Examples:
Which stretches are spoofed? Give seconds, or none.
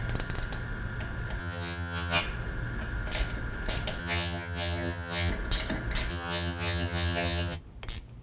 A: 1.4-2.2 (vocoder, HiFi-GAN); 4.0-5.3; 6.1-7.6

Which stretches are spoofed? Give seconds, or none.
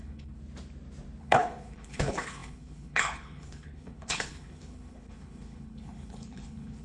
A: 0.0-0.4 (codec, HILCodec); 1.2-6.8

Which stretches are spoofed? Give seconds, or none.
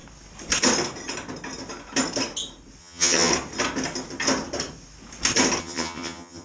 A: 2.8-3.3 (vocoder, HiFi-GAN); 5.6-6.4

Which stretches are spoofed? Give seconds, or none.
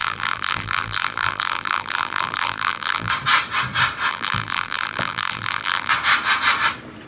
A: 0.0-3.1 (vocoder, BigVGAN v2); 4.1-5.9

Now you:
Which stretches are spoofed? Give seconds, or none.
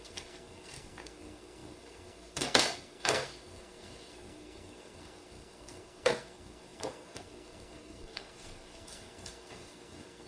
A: 0.0-10.3 (codec, SNAC)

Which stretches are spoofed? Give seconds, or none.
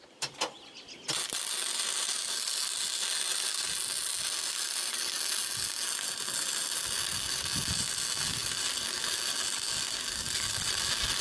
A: none